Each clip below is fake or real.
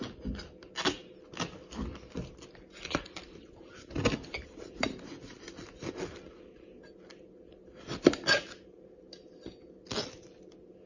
real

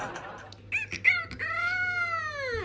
real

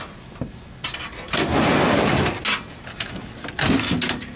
real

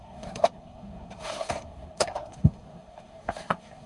fake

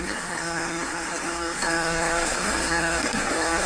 fake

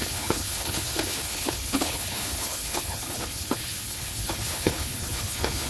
fake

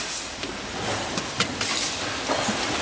real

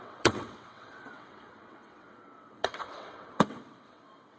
fake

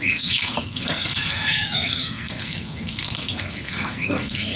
fake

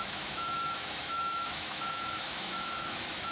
fake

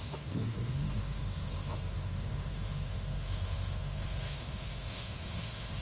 fake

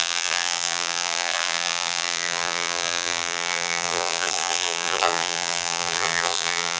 fake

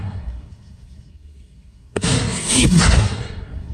fake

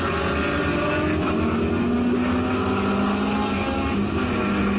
real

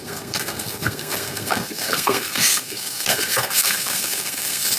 fake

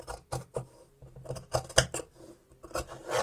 real